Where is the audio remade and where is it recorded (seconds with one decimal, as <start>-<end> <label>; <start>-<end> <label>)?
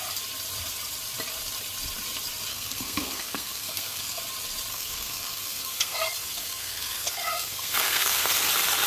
0.0-2.5 recorded; 2.5-4.2 remade; 4.2-4.7 recorded; 4.7-8.5 remade; 8.5-8.9 recorded